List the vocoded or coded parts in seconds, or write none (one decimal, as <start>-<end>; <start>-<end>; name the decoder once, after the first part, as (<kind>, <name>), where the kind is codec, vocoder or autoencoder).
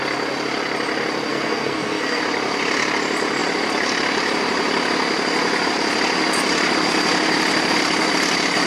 1.3-2.2 (codec, SNAC)